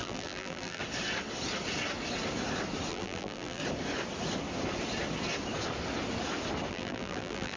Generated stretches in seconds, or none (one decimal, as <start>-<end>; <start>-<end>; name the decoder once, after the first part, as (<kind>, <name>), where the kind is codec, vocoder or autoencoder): 0.0-0.8 (vocoder, BigVGAN v2); 2.9-3.6; 6.7-7.6